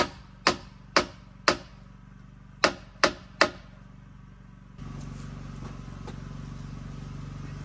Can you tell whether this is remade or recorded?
recorded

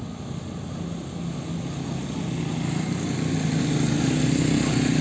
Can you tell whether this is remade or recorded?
recorded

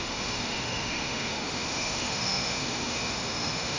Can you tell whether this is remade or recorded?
remade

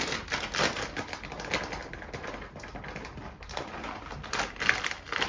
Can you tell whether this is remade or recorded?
recorded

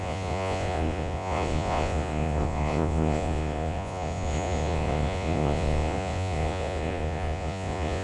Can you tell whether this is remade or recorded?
remade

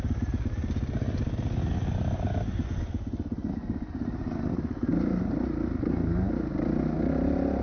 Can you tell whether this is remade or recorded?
recorded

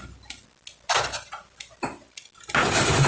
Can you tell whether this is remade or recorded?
recorded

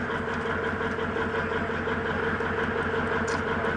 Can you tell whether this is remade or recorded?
recorded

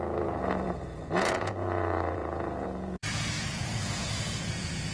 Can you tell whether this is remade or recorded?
remade